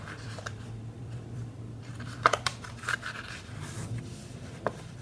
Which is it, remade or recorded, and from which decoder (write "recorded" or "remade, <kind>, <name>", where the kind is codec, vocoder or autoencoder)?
remade, vocoder, BigVGAN v2